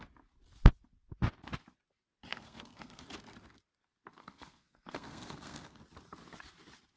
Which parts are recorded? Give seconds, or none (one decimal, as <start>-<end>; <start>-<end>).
0.0-2.3; 3.0-4.2; 5.8-7.0